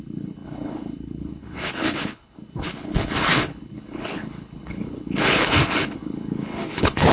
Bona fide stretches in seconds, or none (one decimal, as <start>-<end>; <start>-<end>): none